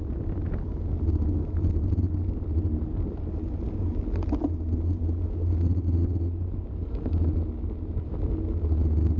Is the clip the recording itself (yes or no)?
yes